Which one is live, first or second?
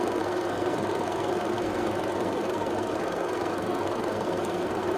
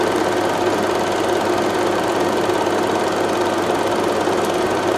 second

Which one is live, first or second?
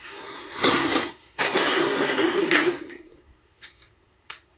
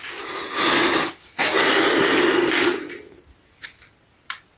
second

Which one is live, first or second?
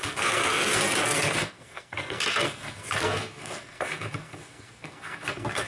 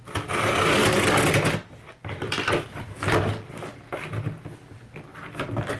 second